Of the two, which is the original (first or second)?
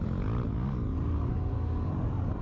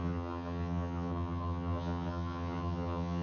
first